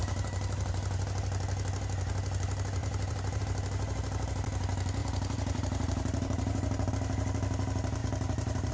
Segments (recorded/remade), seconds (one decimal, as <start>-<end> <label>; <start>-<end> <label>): 0.0-1.0 remade; 1.0-2.8 recorded; 2.8-3.4 remade; 3.4-5.0 recorded; 5.0-6.9 remade; 6.9-8.0 recorded; 8.0-8.7 remade